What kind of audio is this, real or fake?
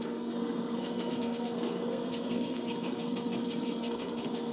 fake